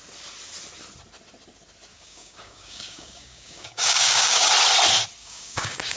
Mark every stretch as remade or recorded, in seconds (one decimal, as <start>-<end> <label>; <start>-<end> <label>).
0.0-1.9 recorded; 1.9-4.5 remade; 4.5-5.2 recorded; 5.2-6.0 remade